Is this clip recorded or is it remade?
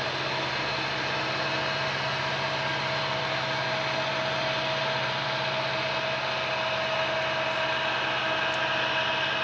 recorded